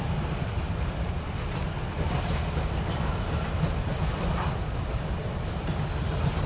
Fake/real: real